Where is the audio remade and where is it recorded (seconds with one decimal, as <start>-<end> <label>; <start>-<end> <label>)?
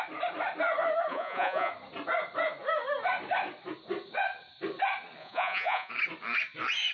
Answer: 0.0-1.1 recorded; 1.1-1.7 remade; 1.7-5.2 recorded; 5.2-5.9 remade; 5.9-6.9 recorded